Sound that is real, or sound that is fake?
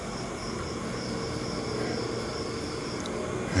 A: real